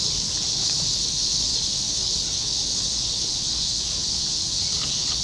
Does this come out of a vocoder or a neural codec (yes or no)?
yes